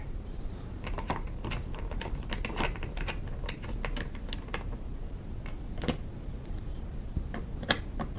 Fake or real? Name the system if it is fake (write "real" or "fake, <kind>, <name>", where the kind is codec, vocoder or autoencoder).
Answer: real